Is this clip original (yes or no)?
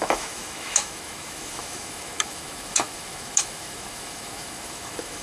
no